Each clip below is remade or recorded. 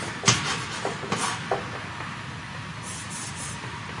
recorded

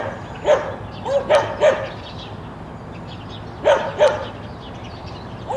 recorded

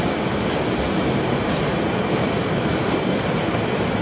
recorded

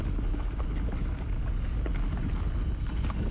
recorded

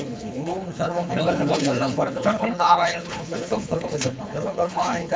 remade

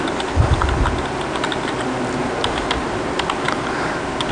recorded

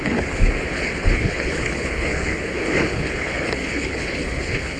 remade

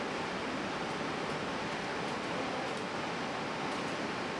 recorded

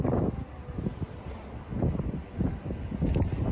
recorded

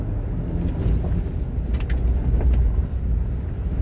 recorded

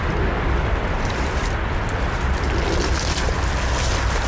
recorded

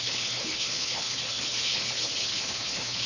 remade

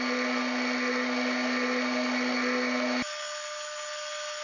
recorded